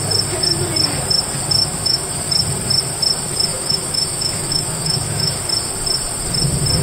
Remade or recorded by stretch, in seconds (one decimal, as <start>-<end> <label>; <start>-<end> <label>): 0.0-1.6 recorded; 1.6-2.1 remade; 2.1-3.5 recorded; 3.5-5.4 remade; 5.4-6.8 recorded